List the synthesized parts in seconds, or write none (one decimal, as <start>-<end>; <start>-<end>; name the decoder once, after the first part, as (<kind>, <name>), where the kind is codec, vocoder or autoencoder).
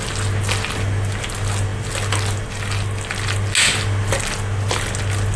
none